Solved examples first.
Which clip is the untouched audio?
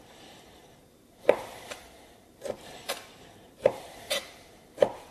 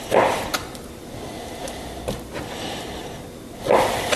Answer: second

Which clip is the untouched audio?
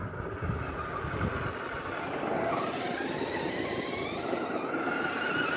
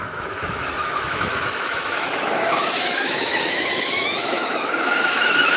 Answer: first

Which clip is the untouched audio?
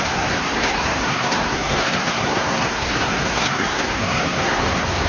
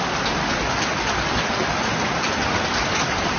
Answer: second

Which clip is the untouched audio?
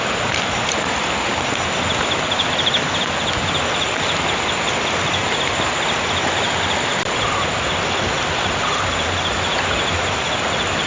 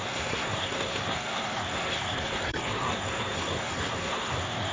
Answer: first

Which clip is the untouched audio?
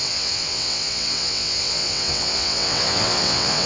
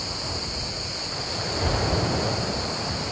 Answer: second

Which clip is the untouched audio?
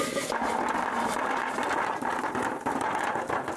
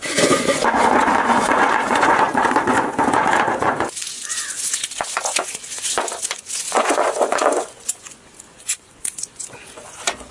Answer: first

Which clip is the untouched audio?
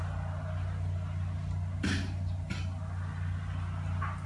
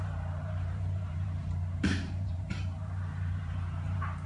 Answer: first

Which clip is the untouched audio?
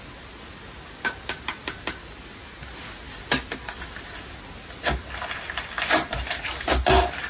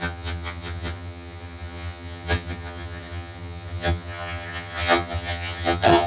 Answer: first